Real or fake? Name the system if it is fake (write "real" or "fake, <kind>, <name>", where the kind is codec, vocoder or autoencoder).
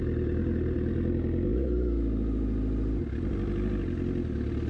real